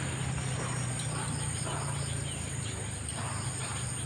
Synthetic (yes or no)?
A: no